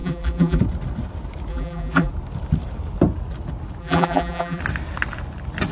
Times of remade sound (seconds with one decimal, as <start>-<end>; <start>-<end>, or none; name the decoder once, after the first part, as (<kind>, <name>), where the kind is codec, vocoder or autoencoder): 0.0-0.6 (vocoder, BigVGAN v2); 1.5-2.1; 3.8-4.6